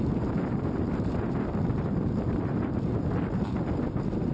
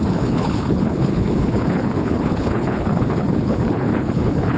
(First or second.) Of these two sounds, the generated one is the second